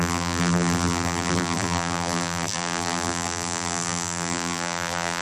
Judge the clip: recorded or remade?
remade